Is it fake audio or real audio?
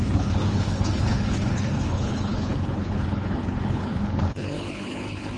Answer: fake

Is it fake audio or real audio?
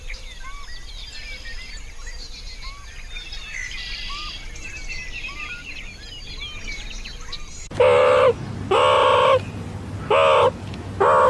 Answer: real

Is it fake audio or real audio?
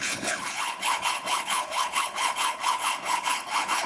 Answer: fake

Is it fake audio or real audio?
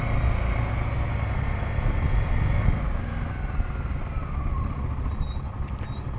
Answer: real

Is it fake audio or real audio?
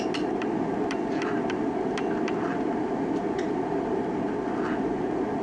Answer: real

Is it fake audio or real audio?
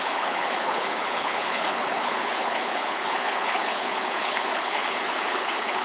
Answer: fake